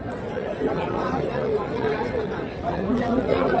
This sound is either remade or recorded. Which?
remade